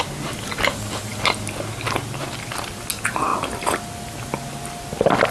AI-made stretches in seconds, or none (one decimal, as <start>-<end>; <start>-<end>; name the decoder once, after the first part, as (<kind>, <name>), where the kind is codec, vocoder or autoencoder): none